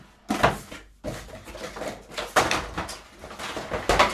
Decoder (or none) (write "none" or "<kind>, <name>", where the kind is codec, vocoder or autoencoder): none